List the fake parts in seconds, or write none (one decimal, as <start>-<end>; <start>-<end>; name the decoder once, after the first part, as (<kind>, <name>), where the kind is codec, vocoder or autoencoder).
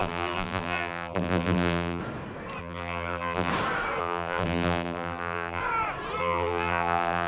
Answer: 0.0-2.0 (vocoder, BigVGAN v2); 2.6-3.5; 4.0-5.6; 6.2-7.3